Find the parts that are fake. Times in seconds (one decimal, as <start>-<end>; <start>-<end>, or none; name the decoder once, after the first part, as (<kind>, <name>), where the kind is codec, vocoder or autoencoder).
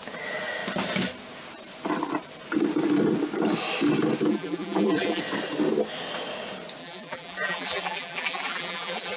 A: 4.3-5.2 (vocoder, BigVGAN v2); 6.8-9.2